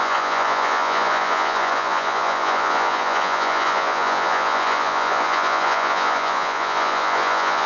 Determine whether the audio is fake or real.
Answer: fake